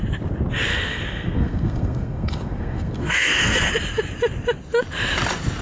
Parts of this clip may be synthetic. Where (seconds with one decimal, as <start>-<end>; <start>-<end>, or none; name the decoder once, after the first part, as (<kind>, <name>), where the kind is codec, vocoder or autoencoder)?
0.7-3.7 (codec, SNAC)